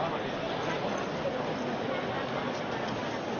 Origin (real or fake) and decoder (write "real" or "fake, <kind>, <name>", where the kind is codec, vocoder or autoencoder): real